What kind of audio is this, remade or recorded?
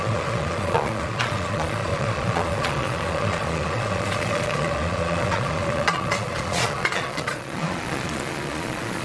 remade